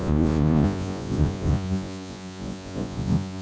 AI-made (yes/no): yes